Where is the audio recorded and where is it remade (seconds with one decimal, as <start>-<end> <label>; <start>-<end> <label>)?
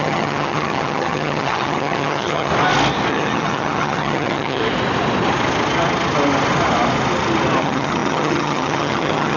0.0-2.5 remade; 2.5-3.1 recorded; 3.1-4.6 remade; 4.6-7.6 recorded; 7.6-9.4 remade